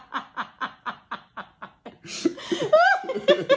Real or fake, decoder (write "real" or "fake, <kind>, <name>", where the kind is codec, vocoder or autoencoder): real